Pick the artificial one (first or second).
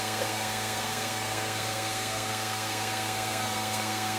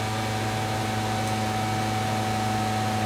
first